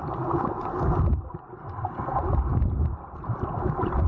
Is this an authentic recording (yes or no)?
yes